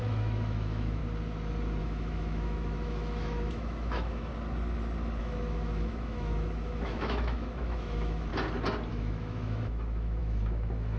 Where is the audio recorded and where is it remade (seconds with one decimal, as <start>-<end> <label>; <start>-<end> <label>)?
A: 0.0-1.0 remade; 1.0-1.8 recorded; 1.8-4.3 remade; 4.3-5.2 recorded; 5.2-8.3 remade; 8.3-8.9 recorded; 8.9-11.0 remade